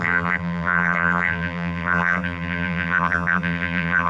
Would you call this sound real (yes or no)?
no